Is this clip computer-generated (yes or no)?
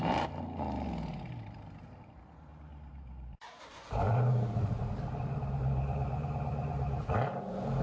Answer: yes